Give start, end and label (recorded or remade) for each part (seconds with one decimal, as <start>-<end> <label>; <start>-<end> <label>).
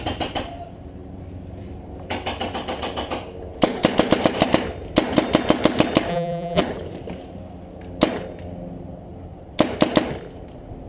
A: 0.0-6.1 recorded; 6.1-6.6 remade; 6.6-10.9 recorded